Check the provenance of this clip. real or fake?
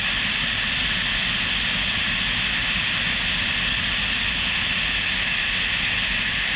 real